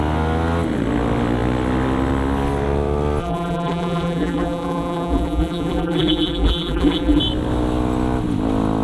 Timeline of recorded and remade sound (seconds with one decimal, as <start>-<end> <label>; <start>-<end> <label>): 0.0-3.2 recorded; 3.2-7.2 remade; 7.2-8.8 recorded

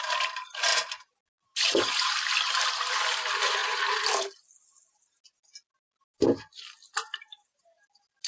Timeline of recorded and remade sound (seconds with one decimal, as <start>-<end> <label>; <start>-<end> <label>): 0.0-8.3 recorded

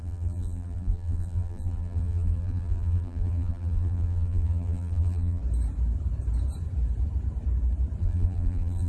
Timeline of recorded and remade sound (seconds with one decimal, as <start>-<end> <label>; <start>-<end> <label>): 0.0-5.4 remade; 5.4-8.0 recorded; 8.0-8.9 remade

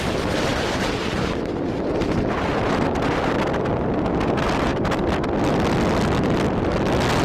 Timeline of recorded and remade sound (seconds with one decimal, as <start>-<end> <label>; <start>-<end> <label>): 0.0-4.7 recorded; 4.7-5.8 remade; 5.8-7.2 recorded

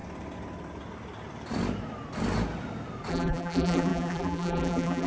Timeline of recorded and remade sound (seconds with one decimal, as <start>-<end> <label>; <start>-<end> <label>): 0.0-3.1 recorded; 3.1-5.1 remade